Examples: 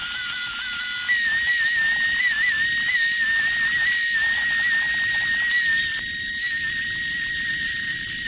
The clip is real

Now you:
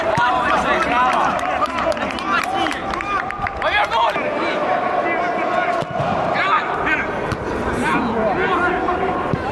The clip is real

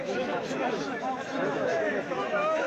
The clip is fake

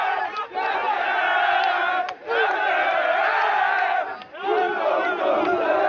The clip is real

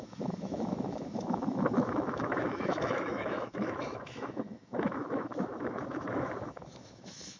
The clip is fake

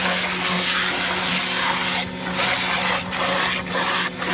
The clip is real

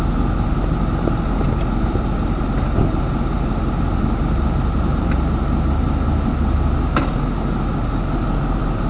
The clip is real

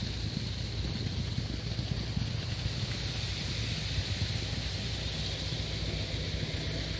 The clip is real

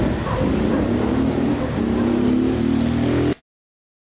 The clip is real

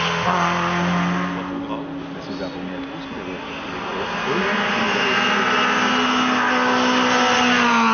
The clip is real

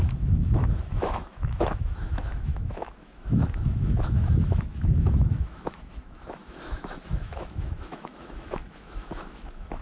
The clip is fake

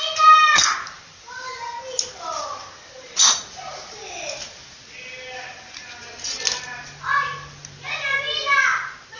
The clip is real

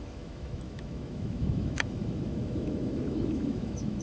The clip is fake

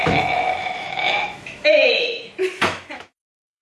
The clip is fake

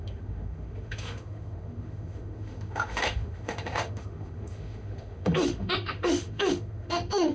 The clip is fake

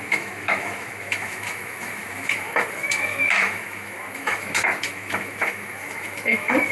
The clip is fake